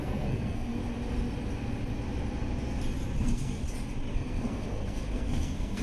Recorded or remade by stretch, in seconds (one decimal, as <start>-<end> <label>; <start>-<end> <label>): 0.0-0.8 remade; 0.8-3.2 recorded; 3.2-3.6 remade; 3.6-4.1 recorded; 4.1-5.8 remade